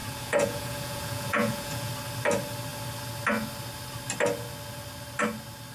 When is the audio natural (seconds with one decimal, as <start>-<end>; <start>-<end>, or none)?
1.9-5.7

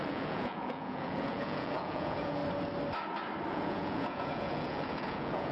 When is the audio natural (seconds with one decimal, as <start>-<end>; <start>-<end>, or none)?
2.4-3.5

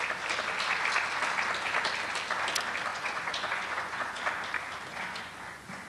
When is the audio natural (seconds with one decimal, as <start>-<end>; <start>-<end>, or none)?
0.0-2.9; 4.2-4.9

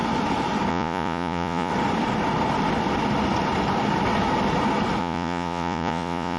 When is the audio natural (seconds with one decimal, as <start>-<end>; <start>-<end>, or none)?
0.0-0.7; 1.7-5.0

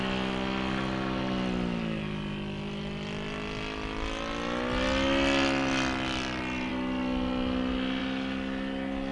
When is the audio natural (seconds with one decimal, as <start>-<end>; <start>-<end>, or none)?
0.0-9.1

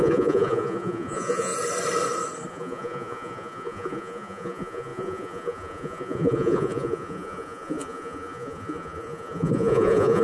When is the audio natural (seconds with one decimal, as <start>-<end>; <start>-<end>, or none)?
1.5-2.5

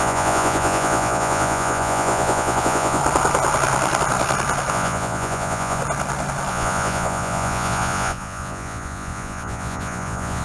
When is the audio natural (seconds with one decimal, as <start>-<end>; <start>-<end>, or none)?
3.0-4.7; 5.8-6.5